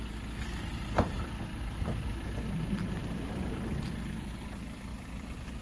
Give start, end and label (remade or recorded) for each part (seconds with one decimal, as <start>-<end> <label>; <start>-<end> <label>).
0.0-0.7 recorded; 0.7-1.8 remade; 1.8-4.9 recorded; 4.9-5.6 remade